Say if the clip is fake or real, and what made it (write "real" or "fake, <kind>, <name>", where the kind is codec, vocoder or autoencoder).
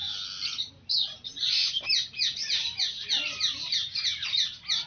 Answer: real